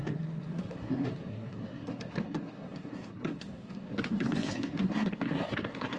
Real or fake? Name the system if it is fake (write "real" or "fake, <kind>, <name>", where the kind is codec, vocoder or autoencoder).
fake, codec, SNAC